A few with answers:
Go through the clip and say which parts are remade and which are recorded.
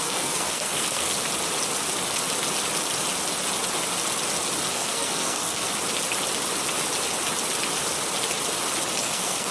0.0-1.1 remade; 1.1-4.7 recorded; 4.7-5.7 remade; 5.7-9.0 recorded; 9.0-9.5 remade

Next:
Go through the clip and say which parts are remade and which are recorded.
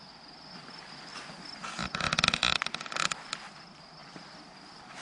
0.0-5.0 recorded